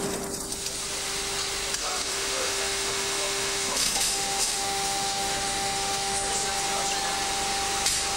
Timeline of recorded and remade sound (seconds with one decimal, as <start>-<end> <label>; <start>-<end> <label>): 0.0-1.8 recorded; 1.8-6.3 remade; 6.3-8.2 recorded